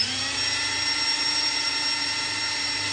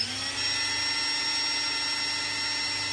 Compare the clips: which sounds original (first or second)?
second